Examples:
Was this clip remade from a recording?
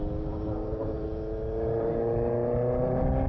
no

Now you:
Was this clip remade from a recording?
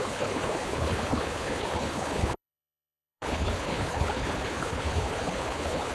yes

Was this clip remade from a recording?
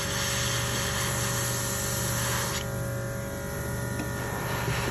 no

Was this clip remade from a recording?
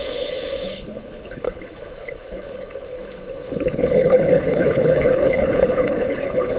yes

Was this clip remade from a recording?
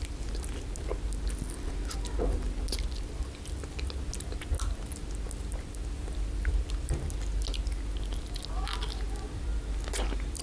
no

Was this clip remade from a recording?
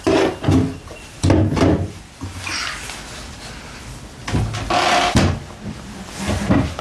no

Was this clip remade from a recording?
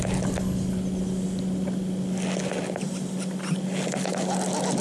no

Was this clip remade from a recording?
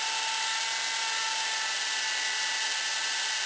no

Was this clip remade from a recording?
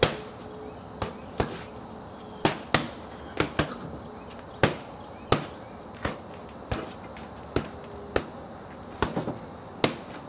no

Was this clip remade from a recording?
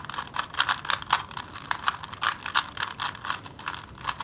no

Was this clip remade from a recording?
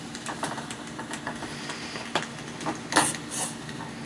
no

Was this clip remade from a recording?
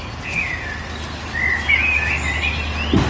no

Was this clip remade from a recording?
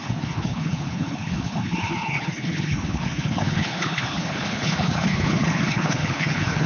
yes